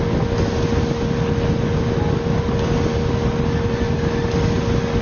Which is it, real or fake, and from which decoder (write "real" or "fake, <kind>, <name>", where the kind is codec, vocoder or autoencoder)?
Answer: real